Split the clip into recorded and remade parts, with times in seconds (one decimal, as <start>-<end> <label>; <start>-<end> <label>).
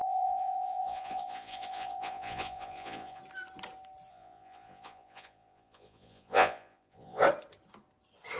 0.0-3.2 remade; 3.2-4.1 recorded; 4.1-7.2 remade; 7.2-8.4 recorded